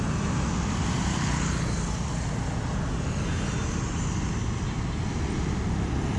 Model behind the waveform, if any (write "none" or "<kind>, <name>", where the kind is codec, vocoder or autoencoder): none